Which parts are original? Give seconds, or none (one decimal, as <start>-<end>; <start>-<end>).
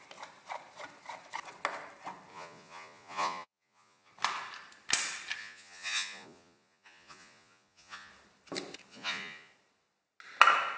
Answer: 0.0-2.3; 4.1-5.4; 8.1-8.9; 9.5-10.8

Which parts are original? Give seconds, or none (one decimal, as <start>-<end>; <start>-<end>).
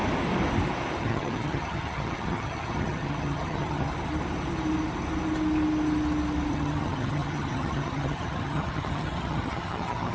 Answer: 0.0-1.0; 3.9-6.5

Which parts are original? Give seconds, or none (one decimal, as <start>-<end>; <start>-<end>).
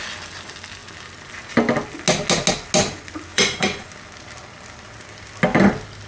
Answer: 0.0-3.3; 3.9-6.1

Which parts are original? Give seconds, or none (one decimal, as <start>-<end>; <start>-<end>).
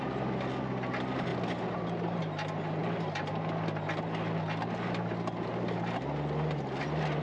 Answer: 0.0-7.2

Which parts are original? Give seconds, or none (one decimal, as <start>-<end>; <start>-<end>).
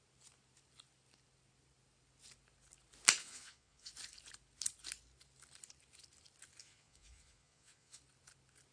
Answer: 0.0-3.2; 3.9-6.6; 8.0-8.7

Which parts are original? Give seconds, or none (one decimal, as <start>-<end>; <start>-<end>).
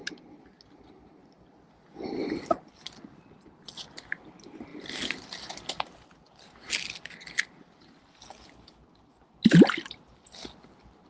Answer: 0.0-11.1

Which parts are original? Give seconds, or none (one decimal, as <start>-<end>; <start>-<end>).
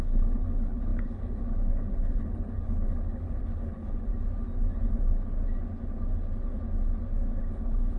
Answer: 4.1-7.4